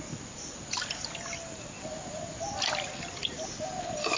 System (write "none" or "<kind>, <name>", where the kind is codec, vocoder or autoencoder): none